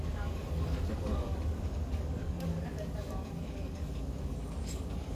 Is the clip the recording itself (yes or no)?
no